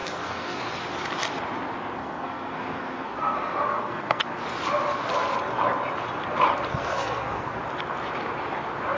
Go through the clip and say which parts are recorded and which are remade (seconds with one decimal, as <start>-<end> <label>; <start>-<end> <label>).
0.0-0.6 remade; 0.6-2.0 recorded; 2.0-4.4 remade; 4.4-6.7 recorded; 6.7-7.6 remade; 7.6-9.0 recorded